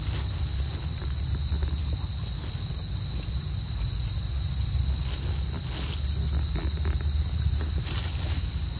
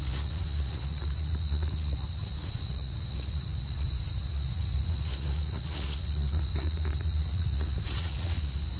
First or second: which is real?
first